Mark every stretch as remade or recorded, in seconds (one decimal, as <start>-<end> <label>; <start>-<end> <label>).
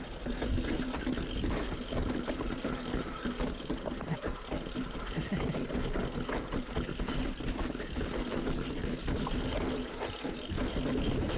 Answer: 0.0-11.4 recorded